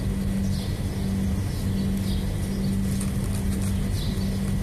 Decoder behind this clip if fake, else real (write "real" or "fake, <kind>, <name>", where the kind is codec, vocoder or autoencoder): real